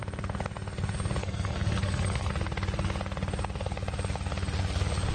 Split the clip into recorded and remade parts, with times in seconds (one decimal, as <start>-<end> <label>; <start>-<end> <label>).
0.0-1.2 recorded; 1.2-2.3 remade; 2.3-5.1 recorded

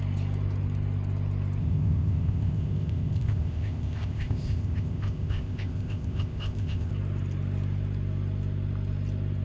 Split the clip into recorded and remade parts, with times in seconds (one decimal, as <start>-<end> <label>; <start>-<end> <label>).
0.0-1.6 recorded; 1.6-6.9 remade; 6.9-9.4 recorded